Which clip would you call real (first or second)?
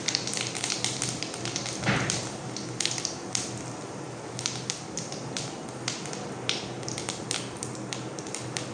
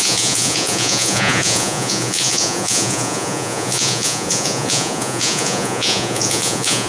first